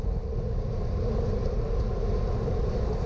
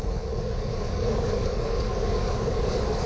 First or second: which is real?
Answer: first